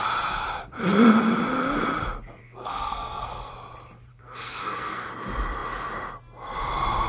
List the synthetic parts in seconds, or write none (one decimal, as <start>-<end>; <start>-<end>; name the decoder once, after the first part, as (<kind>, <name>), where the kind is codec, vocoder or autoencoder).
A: 2.4-3.5 (codec, SNAC); 4.1-5.1